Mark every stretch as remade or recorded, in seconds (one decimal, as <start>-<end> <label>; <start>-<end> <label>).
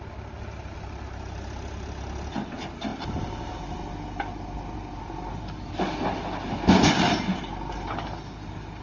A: 0.0-8.8 recorded